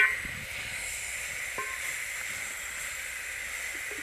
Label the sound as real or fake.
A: real